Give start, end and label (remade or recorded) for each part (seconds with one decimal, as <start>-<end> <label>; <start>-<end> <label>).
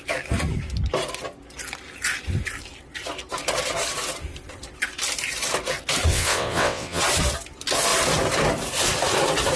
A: 0.0-6.1 recorded; 6.1-7.0 remade; 7.0-9.6 recorded